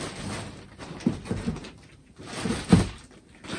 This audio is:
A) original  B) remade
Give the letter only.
A